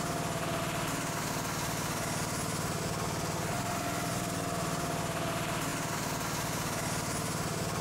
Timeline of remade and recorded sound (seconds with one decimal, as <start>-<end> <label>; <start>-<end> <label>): 0.0-7.8 recorded